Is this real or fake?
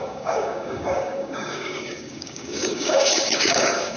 fake